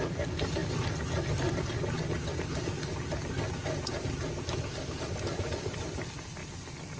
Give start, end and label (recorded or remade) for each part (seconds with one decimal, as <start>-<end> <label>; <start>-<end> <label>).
0.0-7.0 recorded